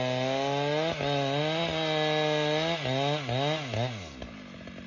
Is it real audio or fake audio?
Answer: real